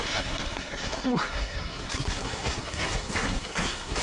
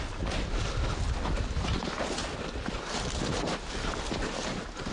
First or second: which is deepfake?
first